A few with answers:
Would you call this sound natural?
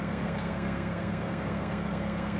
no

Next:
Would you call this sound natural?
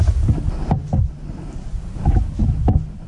yes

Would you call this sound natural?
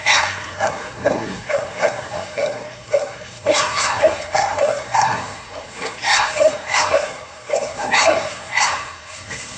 no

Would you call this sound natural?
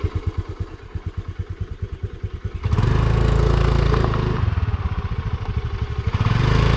yes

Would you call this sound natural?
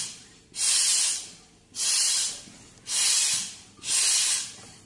yes